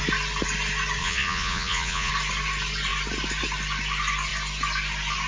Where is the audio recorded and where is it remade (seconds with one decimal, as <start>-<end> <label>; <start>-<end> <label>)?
0.0-1.0 recorded; 1.0-2.1 remade; 2.1-5.3 recorded